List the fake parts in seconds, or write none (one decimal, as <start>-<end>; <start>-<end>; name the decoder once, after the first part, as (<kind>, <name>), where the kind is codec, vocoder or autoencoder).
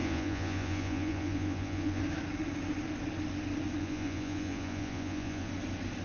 0.0-2.0 (vocoder, Vocos); 3.8-5.5